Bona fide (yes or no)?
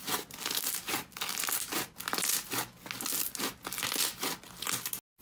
yes